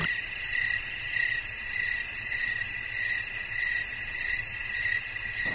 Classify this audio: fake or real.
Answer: real